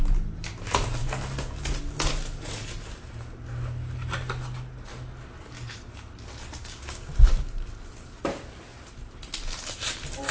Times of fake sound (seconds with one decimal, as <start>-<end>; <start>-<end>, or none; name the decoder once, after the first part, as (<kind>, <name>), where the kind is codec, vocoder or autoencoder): 6.6-7.1 (codec, DAC)